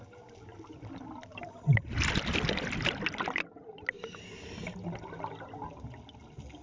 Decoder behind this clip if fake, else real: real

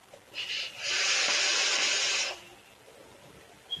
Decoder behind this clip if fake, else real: real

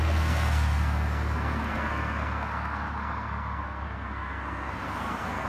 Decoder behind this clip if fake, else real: fake, codec, SNAC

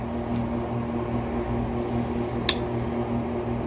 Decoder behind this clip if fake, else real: real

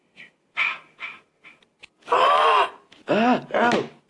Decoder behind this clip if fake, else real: real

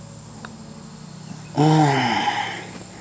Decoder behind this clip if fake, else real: real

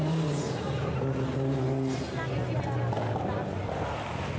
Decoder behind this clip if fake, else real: real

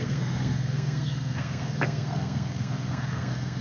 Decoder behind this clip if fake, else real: fake, codec, SNAC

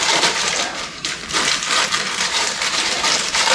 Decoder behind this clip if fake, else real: fake, vocoder, BigVGAN v2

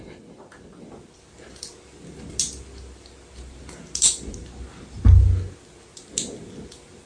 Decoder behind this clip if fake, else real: real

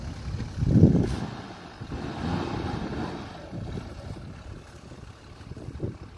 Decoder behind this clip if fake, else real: real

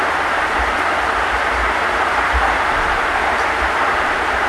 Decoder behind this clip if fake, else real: real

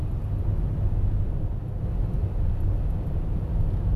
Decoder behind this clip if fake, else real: real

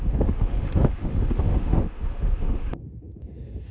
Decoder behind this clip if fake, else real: fake, autoencoder, DAC-VAE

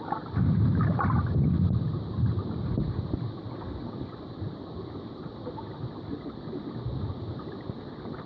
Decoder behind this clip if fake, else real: real